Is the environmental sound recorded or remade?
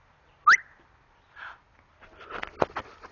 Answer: recorded